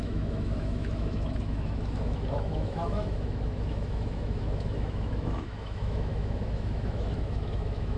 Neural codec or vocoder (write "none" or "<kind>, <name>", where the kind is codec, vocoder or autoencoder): autoencoder, DAC-VAE